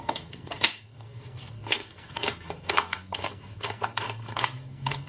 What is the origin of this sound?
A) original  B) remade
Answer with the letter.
B